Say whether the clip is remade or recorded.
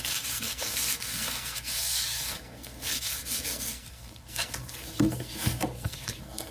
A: remade